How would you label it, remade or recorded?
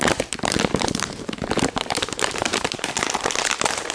remade